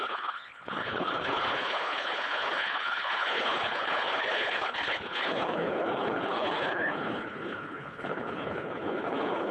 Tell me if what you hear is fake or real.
fake